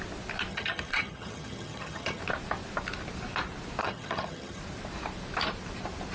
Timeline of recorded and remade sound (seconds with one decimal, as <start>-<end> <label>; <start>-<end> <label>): 0.0-0.5 recorded; 0.5-2.2 remade; 2.2-3.8 recorded; 3.8-4.6 remade; 4.6-6.1 recorded